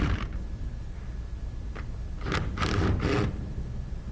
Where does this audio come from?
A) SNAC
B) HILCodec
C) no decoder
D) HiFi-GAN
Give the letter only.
C